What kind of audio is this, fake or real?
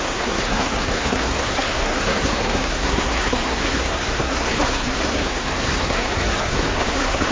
fake